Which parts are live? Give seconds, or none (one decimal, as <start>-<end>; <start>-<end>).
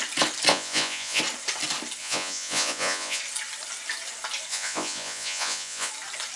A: 0.0-0.5; 1.2-2.0; 3.2-4.5; 5.9-6.4